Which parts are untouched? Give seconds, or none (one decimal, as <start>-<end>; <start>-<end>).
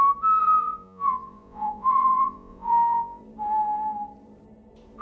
0.0-0.4; 3.2-5.0